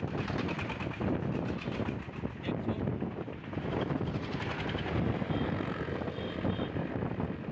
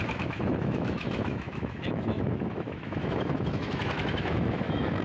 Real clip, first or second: first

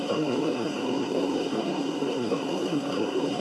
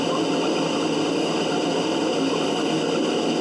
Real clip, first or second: second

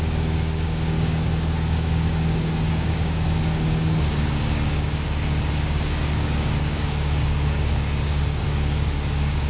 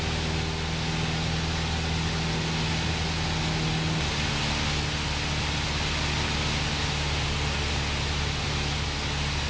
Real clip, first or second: second